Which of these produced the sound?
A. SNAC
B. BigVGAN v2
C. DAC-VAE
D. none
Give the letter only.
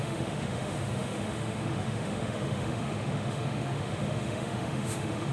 C